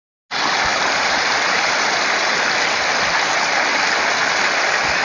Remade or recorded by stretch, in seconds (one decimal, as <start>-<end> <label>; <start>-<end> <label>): 0.0-0.7 recorded; 0.7-1.7 remade; 1.7-5.0 recorded